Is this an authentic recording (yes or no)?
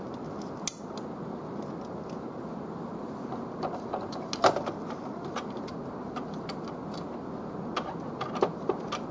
yes